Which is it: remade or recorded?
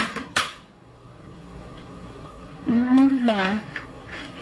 remade